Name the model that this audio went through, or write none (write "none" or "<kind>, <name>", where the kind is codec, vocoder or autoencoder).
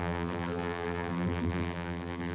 vocoder, BigVGAN v2